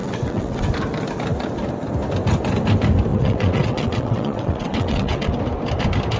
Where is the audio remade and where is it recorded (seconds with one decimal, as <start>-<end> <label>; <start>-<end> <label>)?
0.0-0.7 remade; 0.7-3.1 recorded; 3.1-5.3 remade; 5.3-6.2 recorded